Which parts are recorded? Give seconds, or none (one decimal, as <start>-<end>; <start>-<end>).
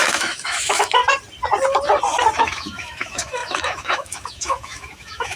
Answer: 1.0-2.4